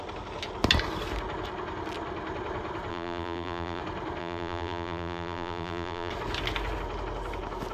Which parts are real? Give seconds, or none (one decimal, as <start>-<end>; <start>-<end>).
0.0-2.9; 3.8-4.2; 6.1-7.7